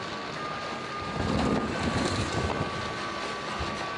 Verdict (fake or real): real